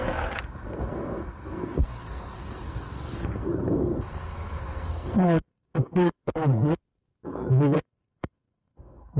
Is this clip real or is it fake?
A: fake